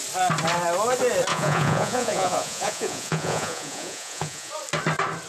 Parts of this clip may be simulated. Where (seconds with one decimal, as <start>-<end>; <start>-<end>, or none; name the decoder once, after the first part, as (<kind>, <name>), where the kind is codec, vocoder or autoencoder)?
1.3-4.5 (vocoder, Vocos)